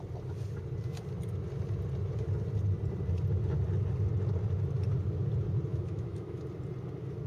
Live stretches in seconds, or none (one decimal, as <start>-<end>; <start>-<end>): 0.0-5.7; 6.4-7.3

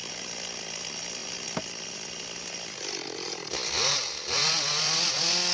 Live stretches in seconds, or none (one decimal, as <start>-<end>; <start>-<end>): 0.0-5.5

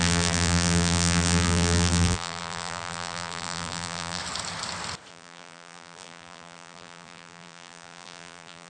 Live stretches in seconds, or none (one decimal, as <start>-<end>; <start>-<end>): 4.2-5.1

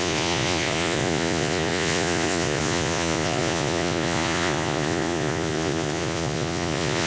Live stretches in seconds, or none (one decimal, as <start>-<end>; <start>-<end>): none

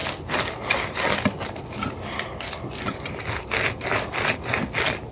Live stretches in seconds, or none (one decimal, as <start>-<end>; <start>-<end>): 0.0-5.1

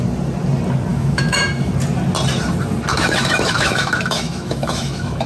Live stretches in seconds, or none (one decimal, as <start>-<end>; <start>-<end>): 0.0-0.9; 1.7-2.9